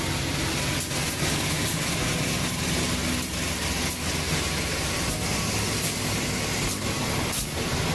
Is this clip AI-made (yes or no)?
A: no